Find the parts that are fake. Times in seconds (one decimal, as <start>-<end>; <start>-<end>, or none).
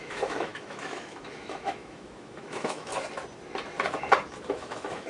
0.0-2.9; 4.5-5.1